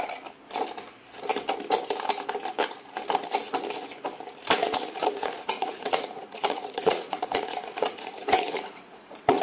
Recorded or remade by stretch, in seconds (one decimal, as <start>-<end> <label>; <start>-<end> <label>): 0.0-4.6 recorded; 4.6-9.4 remade